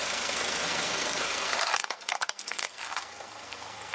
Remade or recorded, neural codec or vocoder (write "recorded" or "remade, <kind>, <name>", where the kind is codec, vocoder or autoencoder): remade, codec, SNAC